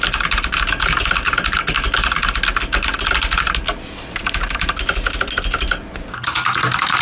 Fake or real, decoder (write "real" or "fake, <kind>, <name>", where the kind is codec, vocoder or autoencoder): real